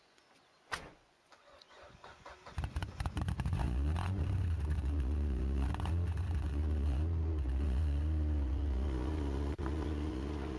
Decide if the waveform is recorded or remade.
remade